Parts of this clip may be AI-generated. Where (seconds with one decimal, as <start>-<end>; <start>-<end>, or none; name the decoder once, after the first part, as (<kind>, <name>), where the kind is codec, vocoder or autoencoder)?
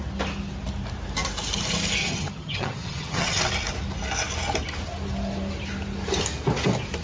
2.0-3.4 (vocoder, HiFi-GAN)